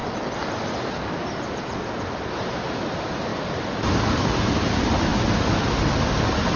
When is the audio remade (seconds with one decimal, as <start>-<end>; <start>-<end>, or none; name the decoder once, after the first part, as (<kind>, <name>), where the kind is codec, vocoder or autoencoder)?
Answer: 2.3-5.1 (vocoder, BigVGAN v2)